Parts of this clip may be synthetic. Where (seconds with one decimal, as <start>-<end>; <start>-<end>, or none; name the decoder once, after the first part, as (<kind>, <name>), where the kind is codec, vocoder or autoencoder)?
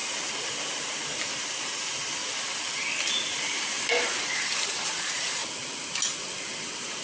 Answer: 0.0-2.2 (vocoder, BigVGAN v2); 3.2-5.4; 6.6-7.0